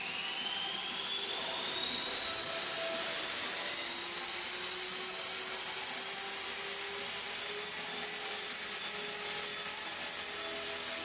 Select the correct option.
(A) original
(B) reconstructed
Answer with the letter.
A